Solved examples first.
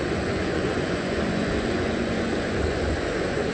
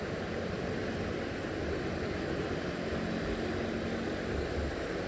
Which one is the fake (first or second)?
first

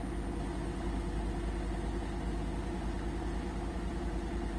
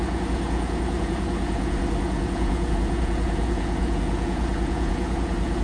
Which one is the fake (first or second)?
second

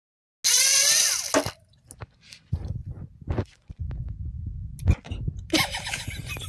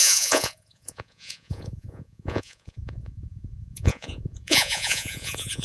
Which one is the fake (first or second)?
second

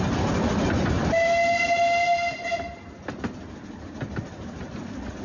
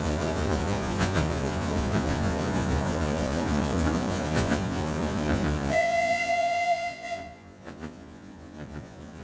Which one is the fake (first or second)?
second